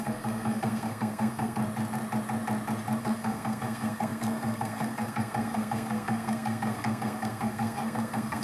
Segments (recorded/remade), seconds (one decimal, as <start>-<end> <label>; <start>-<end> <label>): 0.0-1.6 remade; 1.6-3.0 recorded; 3.0-8.4 remade